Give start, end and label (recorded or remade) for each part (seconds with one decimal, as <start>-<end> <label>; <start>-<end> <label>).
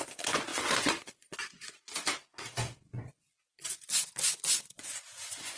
0.0-5.6 remade